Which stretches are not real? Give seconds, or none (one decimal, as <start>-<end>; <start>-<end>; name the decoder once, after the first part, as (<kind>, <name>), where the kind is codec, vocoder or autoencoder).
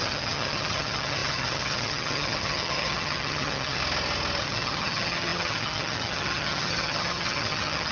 0.0-3.8 (vocoder, HiFi-GAN); 4.4-7.9